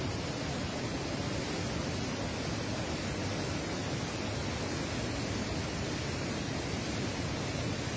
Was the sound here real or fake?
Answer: real